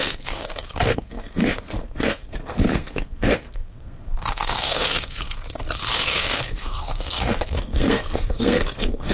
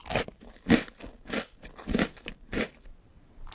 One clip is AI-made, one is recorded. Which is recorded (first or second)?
second